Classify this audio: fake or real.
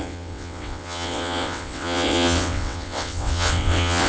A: fake